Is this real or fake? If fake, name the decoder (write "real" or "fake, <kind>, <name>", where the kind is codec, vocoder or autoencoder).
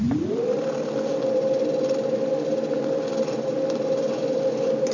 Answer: real